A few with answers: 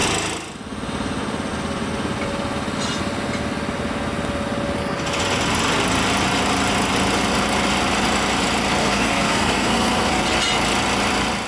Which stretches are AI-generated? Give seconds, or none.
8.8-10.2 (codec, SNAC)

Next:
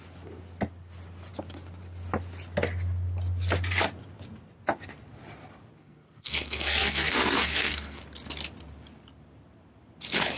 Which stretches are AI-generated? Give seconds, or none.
5.8-8.0 (codec, SNAC)

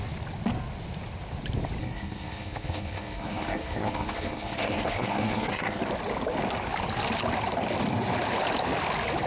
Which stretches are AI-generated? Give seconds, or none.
1.8-5.8 (codec, SNAC)

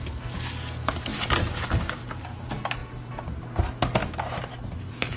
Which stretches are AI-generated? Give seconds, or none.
1.1-2.4 (vocoder, BigVGAN v2)

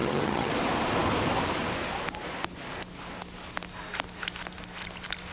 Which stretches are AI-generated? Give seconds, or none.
0.0-0.5 (vocoder, HiFi-GAN)

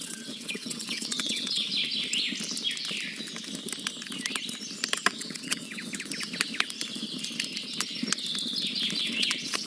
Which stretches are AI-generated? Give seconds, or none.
0.0-1.7 (vocoder, WaveNeXt); 5.1-5.9; 9.0-9.7

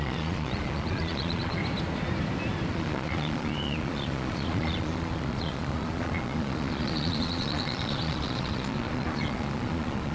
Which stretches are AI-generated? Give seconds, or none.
0.0-1.6 (vocoder, Vocos); 2.7-10.1